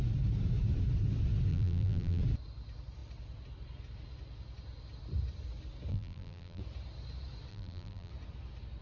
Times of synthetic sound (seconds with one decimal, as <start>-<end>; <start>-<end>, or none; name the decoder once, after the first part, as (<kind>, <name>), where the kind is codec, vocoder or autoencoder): 1.5-2.2 (vocoder, BigVGAN v2); 5.9-6.6; 7.5-8.1